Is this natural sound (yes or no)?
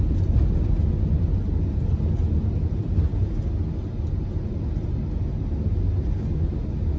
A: yes